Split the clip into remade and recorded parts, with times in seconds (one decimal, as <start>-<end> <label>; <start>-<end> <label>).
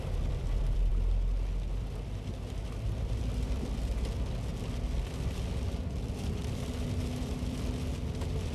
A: 0.0-0.9 remade; 0.9-1.7 recorded; 1.7-4.5 remade; 4.5-5.9 recorded; 5.9-6.4 remade; 6.4-7.2 recorded; 7.2-8.5 remade